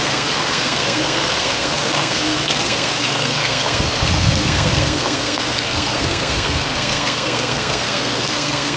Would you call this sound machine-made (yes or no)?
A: yes